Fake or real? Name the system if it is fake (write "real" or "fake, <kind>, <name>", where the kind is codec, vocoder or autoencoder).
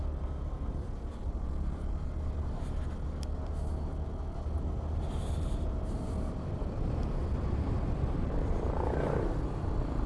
real